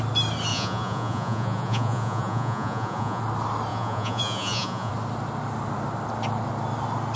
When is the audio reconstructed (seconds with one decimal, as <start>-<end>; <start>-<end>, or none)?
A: 0.5-3.2; 3.7-4.9